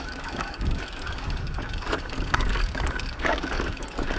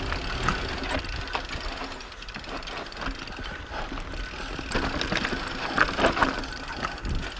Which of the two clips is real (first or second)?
second